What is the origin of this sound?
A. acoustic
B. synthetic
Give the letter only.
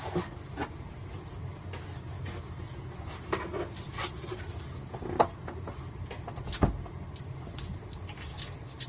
A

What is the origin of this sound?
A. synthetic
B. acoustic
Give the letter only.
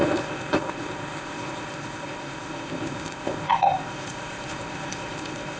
A